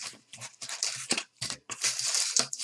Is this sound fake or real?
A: fake